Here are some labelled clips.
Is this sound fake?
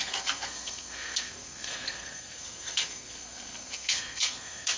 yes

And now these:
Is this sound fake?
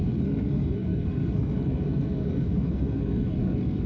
yes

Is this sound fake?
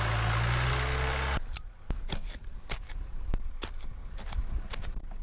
no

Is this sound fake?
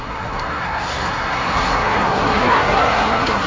yes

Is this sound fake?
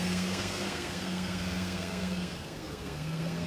yes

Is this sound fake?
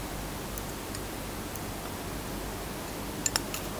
no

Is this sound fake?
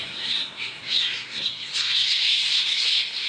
yes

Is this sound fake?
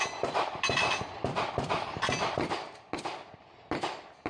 no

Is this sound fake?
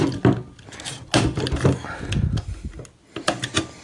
no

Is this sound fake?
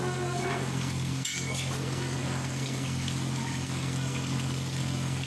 yes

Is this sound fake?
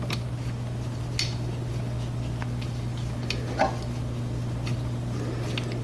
no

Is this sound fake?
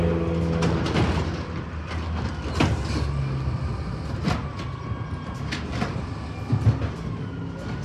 no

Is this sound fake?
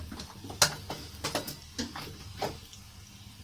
no